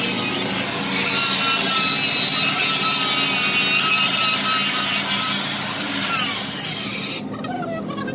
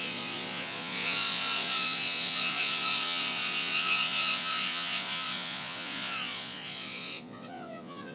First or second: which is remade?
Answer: second